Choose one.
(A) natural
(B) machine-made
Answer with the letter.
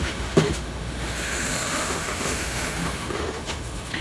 B